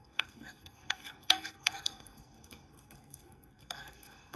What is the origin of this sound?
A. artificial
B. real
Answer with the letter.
A